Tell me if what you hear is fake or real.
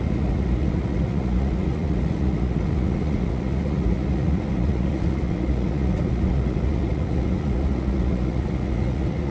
fake